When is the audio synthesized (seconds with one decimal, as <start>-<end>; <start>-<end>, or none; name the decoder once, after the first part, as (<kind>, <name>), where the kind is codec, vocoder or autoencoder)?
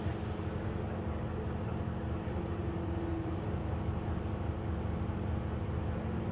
none